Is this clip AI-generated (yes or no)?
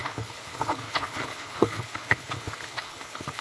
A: yes